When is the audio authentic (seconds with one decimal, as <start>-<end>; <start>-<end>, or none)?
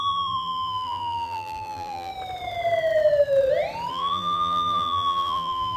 2.1-3.9